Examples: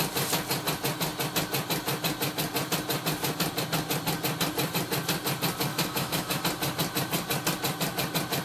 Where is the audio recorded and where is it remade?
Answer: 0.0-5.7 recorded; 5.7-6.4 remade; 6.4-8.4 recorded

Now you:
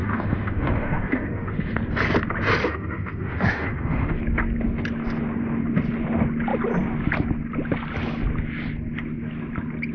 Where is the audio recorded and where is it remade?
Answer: 0.0-1.7 remade; 1.7-2.6 recorded; 2.6-4.2 remade; 4.2-9.9 recorded

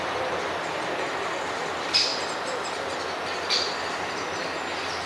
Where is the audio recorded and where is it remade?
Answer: 0.0-5.1 recorded

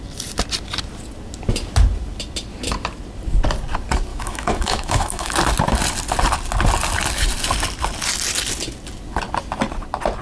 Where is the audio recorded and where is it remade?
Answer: 0.0-4.1 recorded; 4.1-5.3 remade; 5.3-10.2 recorded

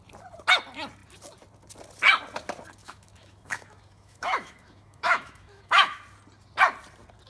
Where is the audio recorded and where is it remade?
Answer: 0.0-2.8 recorded; 2.8-6.0 remade; 6.0-7.3 recorded